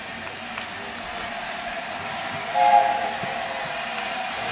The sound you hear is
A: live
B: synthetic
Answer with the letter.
A